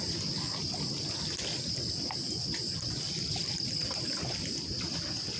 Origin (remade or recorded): recorded